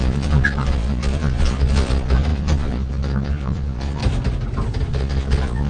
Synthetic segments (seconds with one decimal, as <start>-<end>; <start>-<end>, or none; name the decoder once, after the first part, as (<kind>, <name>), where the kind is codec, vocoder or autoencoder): 0.0-4.0 (vocoder, Vocos); 4.9-5.7